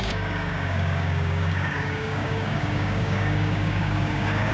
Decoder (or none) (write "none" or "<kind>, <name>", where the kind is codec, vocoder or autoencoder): codec, DAC